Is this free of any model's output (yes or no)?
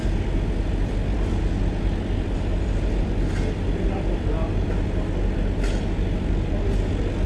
yes